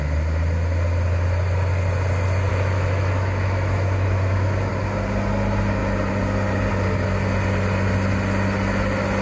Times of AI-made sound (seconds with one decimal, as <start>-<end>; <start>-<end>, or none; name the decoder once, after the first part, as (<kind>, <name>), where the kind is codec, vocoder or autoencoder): 2.5-4.7 (autoencoder, DAC-VAE)